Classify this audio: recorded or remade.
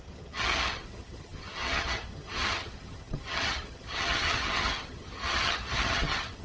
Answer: remade